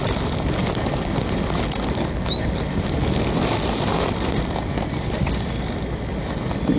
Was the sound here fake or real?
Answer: real